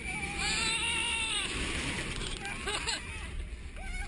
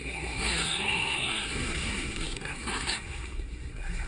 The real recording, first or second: first